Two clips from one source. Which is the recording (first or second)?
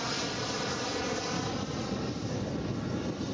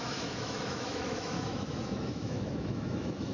first